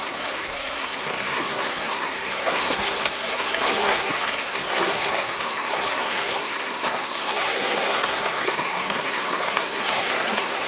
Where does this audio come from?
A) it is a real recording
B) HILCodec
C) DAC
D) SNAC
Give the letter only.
D